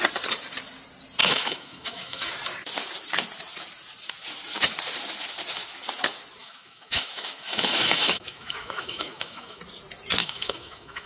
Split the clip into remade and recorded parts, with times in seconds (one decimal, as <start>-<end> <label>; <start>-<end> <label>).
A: 0.0-1.2 recorded; 1.2-2.3 remade; 2.3-6.4 recorded; 6.4-9.6 remade; 9.6-10.2 recorded; 10.2-11.1 remade